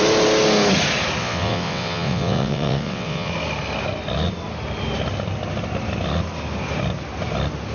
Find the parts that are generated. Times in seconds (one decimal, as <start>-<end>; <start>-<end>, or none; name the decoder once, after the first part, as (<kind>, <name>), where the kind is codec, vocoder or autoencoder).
1.2-3.3 (vocoder, WaveNeXt)